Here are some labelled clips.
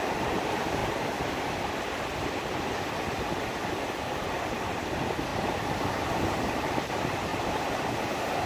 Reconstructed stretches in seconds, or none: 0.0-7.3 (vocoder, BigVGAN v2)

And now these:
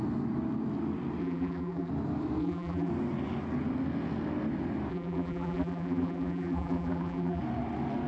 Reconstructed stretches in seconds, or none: 1.2-1.9 (vocoder, BigVGAN v2); 2.4-2.9; 4.9-7.4

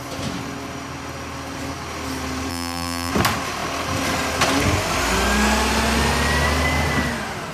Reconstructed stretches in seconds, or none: 2.5-3.1 (vocoder, BigVGAN v2)

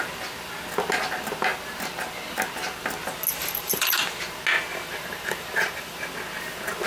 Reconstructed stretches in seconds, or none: 3.4-4.0 (vocoder, BigVGAN v2); 4.7-6.0

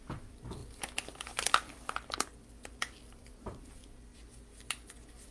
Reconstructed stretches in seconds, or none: 0.0-0.6 (vocoder, BigVGAN v2); 1.5-4.1

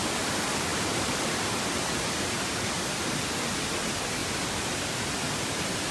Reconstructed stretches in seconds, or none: 0.7-2.7 (vocoder, BigVGAN v2); 4.2-5.2

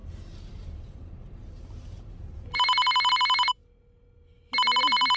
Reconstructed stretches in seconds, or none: 0.0-3.6 (vocoder, BigVGAN v2); 4.8-5.2

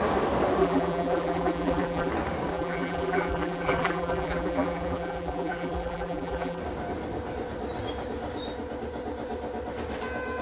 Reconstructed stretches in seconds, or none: 0.6-2.1 (vocoder, BigVGAN v2); 2.5-6.6